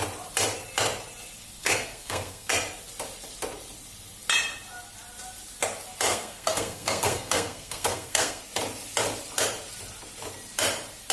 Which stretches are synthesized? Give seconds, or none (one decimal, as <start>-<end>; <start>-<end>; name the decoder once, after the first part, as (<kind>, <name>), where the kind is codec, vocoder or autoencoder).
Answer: 1.6-2.5 (codec, SNAC); 6.1-8.4

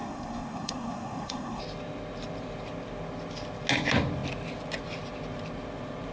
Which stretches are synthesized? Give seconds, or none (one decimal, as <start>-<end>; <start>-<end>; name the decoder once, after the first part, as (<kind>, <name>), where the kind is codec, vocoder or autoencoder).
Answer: 0.0-1.6 (codec, SNAC)